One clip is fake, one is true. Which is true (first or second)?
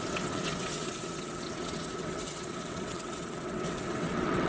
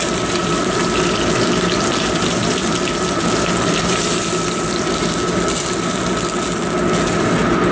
second